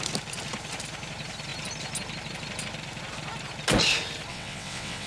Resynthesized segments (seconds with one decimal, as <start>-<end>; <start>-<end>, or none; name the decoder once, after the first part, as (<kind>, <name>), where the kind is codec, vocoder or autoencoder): 4.3-5.1 (vocoder, WaveNeXt)